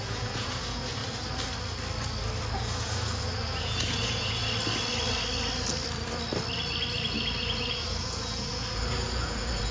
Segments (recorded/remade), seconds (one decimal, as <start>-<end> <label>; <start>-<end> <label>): 0.0-1.0 remade; 1.0-2.5 recorded; 2.5-4.4 remade; 4.4-7.7 recorded; 7.7-9.7 remade